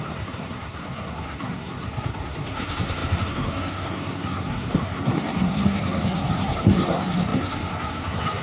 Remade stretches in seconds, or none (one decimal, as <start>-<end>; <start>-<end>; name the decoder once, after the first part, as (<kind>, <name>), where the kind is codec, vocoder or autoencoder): 0.0-8.4 (codec, SNAC)